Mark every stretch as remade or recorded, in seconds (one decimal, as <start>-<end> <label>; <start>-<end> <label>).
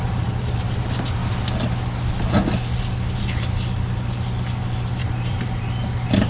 0.0-1.2 remade; 1.2-5.0 recorded; 5.0-6.3 remade